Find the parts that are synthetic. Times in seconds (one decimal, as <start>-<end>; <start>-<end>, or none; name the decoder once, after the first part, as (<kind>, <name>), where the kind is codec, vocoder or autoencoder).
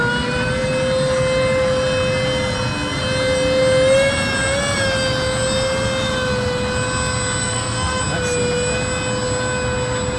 7.4-8.0 (codec, SNAC)